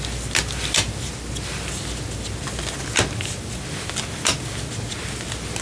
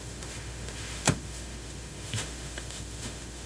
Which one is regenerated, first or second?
second